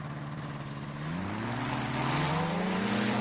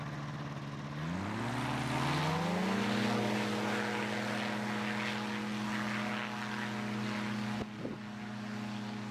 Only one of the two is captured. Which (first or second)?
second